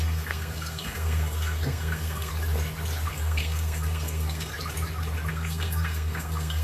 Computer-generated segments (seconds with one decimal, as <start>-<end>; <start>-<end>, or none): 0.0-2.3; 3.1-4.5; 5.3-6.6